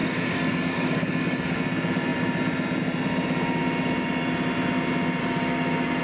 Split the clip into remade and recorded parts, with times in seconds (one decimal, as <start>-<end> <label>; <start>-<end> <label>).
0.0-1.6 remade; 1.6-5.2 recorded; 5.2-6.0 remade